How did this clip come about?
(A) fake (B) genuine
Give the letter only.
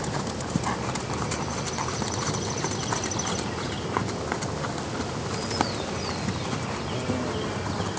B